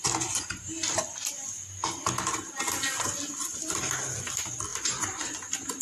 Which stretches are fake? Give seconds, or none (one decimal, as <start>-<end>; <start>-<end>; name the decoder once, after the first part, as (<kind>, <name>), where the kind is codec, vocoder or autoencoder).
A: none

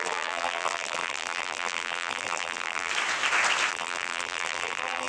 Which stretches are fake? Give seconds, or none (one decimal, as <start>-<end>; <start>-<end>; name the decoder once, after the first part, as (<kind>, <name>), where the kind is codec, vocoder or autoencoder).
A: 0.0-2.9 (vocoder, BigVGAN v2); 3.7-5.1